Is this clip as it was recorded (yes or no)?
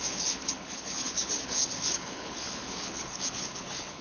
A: no